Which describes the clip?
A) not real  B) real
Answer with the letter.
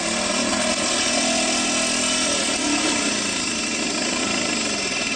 B